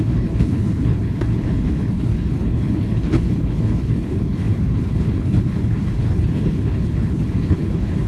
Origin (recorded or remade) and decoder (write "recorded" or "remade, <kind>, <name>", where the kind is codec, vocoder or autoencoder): remade, codec, HILCodec